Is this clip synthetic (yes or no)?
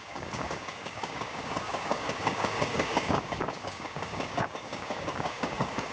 yes